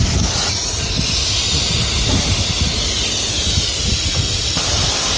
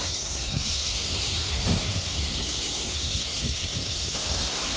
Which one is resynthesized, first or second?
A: second